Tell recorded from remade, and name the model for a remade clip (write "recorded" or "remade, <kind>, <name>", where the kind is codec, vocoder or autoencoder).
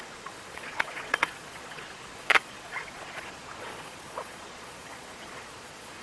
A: remade, vocoder, Vocos